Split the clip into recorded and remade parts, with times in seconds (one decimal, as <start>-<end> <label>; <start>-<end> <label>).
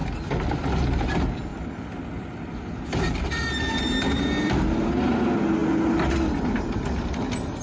0.0-7.6 recorded